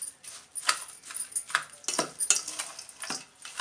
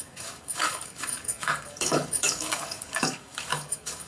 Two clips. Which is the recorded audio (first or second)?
first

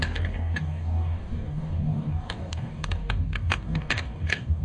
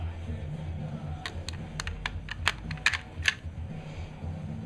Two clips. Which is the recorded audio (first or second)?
second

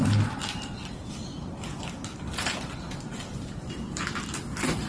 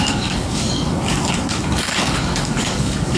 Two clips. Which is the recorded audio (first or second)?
first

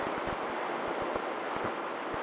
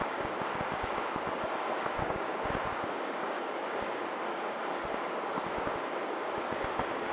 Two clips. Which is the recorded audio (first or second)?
first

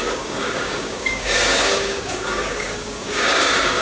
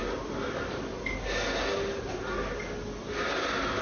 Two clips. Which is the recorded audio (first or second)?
second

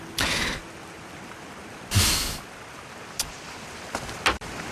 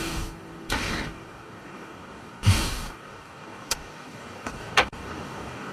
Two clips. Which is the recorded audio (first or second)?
first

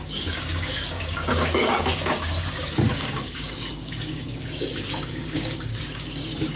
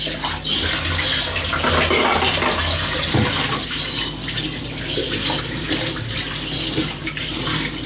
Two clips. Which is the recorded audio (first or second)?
second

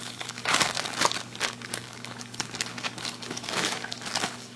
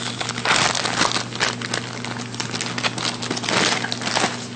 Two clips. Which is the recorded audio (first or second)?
second